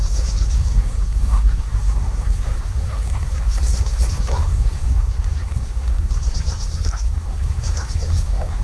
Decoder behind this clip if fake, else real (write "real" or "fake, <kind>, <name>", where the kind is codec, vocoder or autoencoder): fake, codec, SNAC